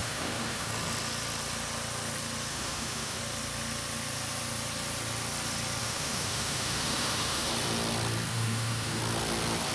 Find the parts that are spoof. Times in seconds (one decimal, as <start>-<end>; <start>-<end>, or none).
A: 0.0-0.7; 2.5-3.2; 5.8-7.5; 8.3-9.0